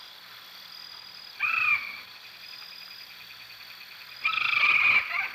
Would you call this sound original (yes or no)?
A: yes